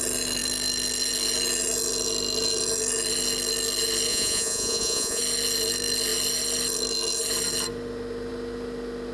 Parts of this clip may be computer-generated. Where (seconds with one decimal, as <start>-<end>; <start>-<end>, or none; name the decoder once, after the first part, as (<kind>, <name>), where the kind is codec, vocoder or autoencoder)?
4.1-5.2 (vocoder, Vocos)